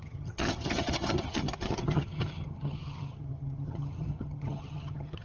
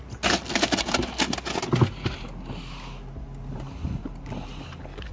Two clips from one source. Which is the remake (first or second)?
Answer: first